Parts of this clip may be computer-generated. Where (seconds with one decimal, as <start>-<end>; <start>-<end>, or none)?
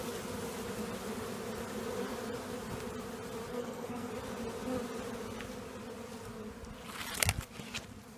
3.5-4.1